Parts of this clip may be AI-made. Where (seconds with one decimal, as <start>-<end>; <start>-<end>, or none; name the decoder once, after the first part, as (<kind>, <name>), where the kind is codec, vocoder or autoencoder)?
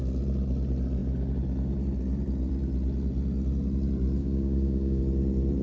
4.2-5.0 (codec, DAC)